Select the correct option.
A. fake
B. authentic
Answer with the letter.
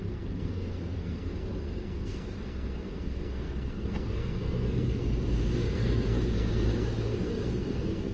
A